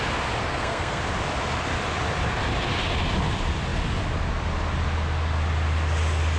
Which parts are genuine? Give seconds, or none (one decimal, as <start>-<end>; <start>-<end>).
0.0-0.4; 1.0-6.4

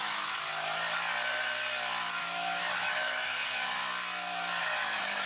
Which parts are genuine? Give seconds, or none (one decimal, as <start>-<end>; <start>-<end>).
0.5-2.2; 3.8-4.6

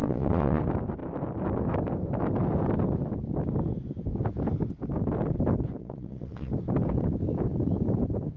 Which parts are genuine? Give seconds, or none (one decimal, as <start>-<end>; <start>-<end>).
0.6-5.8; 6.5-8.4

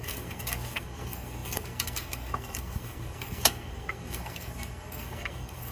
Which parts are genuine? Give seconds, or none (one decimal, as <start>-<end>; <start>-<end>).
none

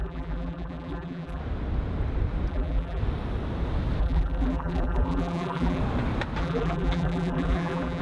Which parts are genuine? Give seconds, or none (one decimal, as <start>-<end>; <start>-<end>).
1.4-2.5; 3.0-4.0; 5.8-6.4